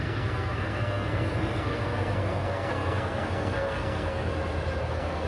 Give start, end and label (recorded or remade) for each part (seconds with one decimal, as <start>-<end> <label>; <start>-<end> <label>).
0.0-4.3 remade; 4.3-4.8 recorded; 4.8-5.3 remade